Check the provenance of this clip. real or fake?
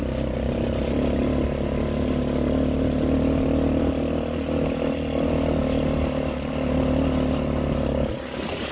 real